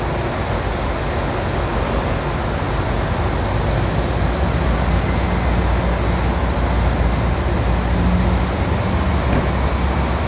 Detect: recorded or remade recorded